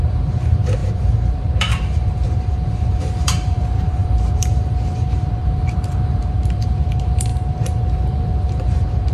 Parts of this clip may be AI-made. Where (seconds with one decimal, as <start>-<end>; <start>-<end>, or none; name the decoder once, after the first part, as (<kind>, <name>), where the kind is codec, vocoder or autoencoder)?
0.0-7.3 (vocoder, BigVGAN v2); 7.9-9.1